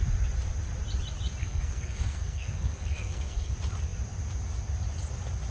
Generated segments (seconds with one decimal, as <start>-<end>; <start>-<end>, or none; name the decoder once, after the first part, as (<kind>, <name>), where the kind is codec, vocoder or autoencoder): 1.4-3.5 (codec, SNAC)